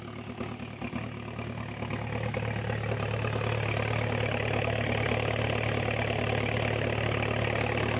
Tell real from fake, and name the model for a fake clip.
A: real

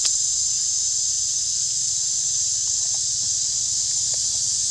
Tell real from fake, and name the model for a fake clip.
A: real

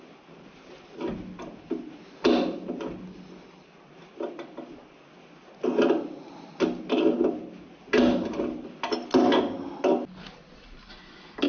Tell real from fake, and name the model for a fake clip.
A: real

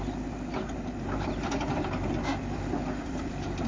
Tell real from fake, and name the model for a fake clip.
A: fake, vocoder, BigVGAN v2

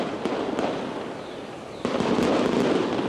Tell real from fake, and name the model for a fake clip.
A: real